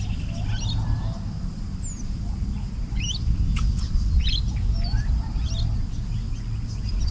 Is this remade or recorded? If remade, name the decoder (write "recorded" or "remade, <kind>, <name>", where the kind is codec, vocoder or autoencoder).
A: recorded